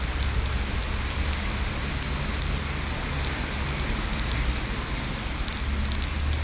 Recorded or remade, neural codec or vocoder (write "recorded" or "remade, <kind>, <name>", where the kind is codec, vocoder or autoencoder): recorded